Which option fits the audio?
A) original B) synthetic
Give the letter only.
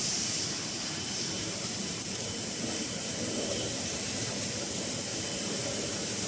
B